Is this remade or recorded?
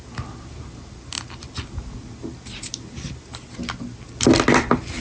recorded